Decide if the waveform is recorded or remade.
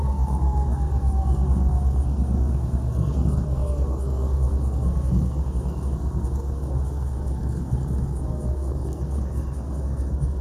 remade